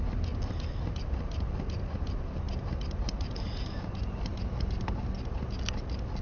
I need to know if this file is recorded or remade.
recorded